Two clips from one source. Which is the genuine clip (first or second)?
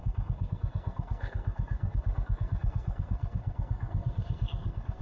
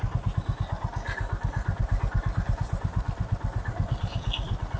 second